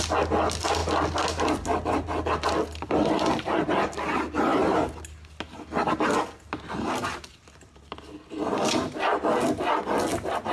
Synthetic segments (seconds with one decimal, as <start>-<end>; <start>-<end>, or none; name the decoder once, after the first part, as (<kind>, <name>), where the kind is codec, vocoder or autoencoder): none